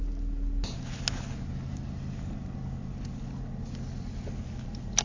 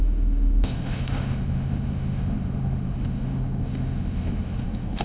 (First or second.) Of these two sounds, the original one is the first